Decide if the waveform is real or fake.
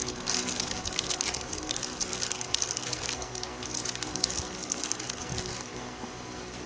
fake